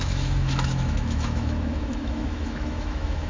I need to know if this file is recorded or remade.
remade